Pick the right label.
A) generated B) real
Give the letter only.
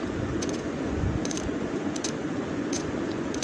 A